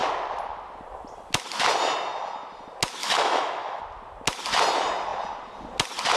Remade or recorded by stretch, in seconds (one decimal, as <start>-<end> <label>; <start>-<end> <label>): 0.0-3.0 recorded; 3.0-3.8 remade; 3.8-6.2 recorded